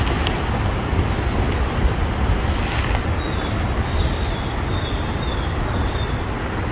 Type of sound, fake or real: real